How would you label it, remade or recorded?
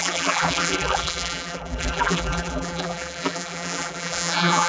remade